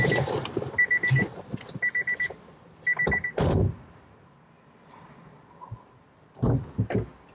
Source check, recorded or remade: recorded